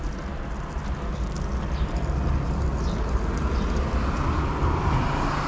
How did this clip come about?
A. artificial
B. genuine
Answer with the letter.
B